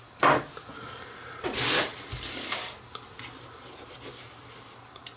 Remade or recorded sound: recorded